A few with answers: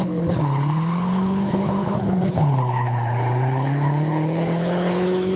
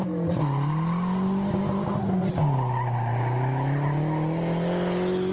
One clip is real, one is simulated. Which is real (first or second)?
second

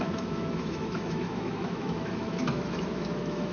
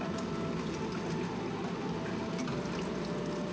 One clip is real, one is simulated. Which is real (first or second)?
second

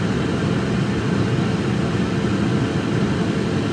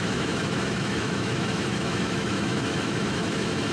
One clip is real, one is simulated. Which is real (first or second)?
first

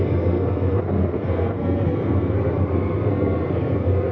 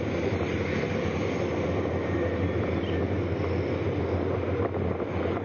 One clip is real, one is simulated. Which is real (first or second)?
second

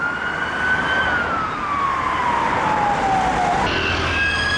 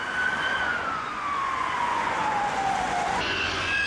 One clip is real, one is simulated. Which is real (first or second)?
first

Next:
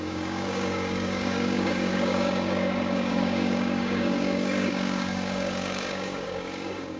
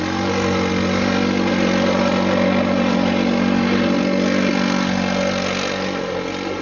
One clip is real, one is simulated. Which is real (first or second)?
second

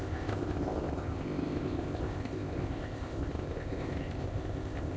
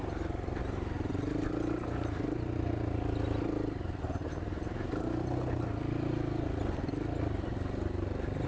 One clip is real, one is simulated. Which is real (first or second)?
second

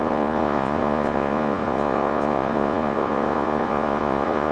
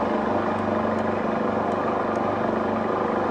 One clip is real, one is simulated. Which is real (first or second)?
second